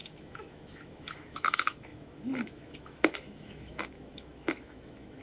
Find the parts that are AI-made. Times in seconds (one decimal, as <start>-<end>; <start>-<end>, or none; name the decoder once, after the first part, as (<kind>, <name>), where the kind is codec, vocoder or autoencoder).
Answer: 0.0-5.2 (autoencoder, DAC-VAE)

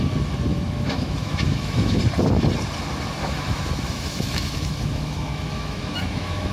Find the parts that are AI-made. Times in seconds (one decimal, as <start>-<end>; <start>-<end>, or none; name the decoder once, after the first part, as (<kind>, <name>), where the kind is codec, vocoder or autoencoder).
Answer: 0.5-2.0 (autoencoder, DAC-VAE); 3.2-6.5

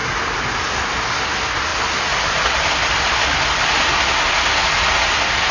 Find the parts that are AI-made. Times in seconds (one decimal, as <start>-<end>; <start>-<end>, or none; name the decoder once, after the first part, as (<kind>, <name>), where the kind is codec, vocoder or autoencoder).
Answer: none

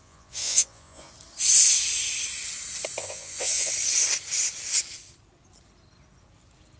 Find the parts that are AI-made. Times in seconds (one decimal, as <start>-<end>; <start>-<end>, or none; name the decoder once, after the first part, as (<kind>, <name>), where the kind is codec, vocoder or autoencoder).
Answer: 0.0-1.1 (vocoder, Vocos); 3.0-3.7